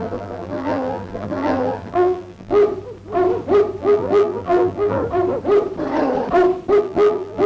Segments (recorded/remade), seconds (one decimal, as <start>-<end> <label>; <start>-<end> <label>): 0.0-2.6 remade; 2.6-3.8 recorded; 3.8-5.0 remade; 5.0-6.8 recorded; 6.8-7.5 remade